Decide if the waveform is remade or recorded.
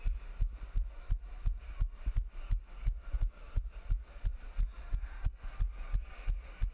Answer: recorded